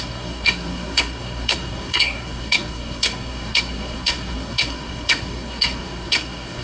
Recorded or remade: remade